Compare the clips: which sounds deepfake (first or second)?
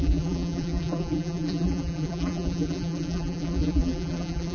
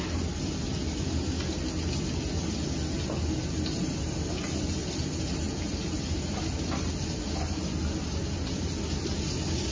first